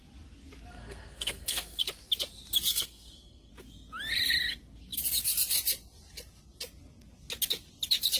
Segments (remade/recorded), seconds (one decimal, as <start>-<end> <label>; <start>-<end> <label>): 0.0-0.7 recorded; 0.7-1.8 remade; 1.8-2.7 recorded; 2.7-3.5 remade; 3.5-8.2 recorded

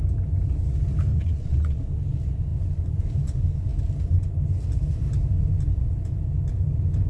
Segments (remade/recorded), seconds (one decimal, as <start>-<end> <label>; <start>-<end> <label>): 0.0-1.1 recorded; 1.1-1.8 remade; 1.8-7.1 recorded

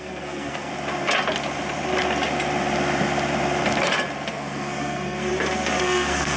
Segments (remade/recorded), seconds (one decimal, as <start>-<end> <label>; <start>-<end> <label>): 0.0-0.7 remade; 0.7-4.3 recorded; 4.3-5.3 remade; 5.3-5.8 recorded; 5.8-6.4 remade

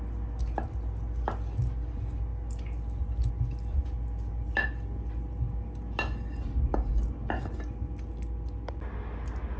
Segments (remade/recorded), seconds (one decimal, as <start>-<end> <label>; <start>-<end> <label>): 0.0-9.6 recorded

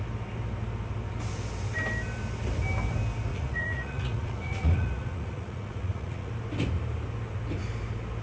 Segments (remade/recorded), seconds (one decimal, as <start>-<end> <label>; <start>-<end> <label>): 0.0-3.3 recorded; 3.3-6.3 remade; 6.3-8.2 recorded

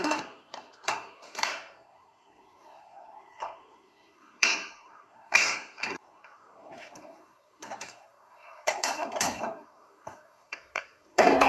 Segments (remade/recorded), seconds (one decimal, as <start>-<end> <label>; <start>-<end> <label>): 0.0-11.5 remade